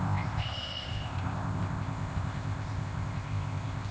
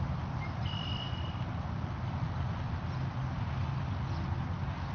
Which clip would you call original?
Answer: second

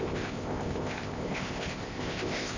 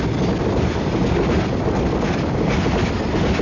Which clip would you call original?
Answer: second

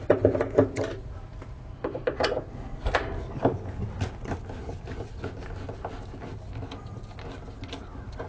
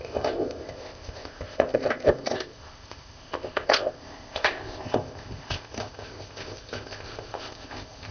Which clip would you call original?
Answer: first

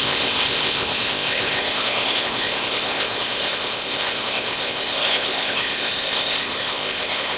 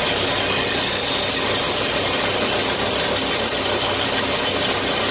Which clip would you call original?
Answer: second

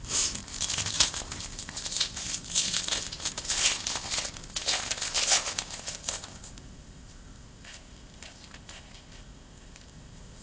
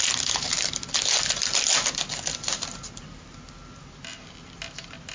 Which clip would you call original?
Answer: second